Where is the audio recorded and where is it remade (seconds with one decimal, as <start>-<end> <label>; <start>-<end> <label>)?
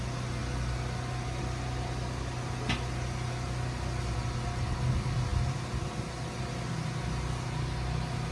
0.0-8.3 recorded